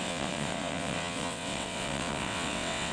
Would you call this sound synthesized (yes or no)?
yes